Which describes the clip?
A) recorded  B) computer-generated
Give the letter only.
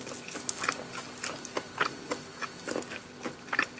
A